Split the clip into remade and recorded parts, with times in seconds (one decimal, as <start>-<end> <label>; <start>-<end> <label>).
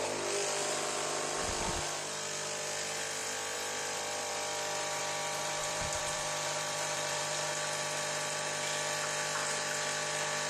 0.0-3.2 recorded; 3.2-5.0 remade; 5.0-5.6 recorded; 5.6-7.2 remade; 7.2-10.5 recorded